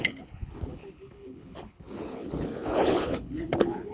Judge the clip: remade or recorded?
remade